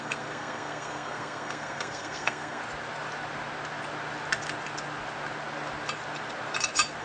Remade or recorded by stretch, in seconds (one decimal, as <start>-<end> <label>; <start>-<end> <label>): 0.0-2.6 remade; 2.6-7.0 recorded